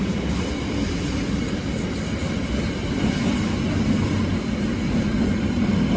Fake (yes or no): no